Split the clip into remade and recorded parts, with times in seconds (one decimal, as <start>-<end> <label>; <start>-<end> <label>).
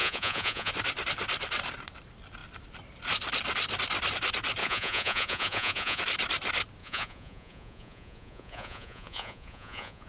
0.0-0.7 remade; 0.7-4.6 recorded; 4.6-6.0 remade; 6.0-6.8 recorded; 6.8-10.1 remade